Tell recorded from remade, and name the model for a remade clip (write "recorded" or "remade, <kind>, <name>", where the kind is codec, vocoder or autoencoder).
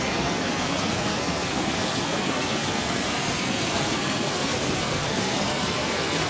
remade, codec, SNAC